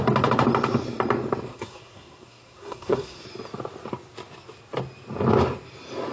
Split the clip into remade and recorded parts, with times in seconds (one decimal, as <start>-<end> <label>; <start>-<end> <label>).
0.0-1.5 recorded; 1.5-3.2 remade; 3.2-6.1 recorded